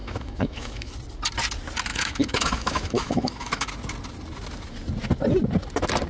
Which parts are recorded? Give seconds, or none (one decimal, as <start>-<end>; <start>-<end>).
0.9-1.9; 3.7-6.1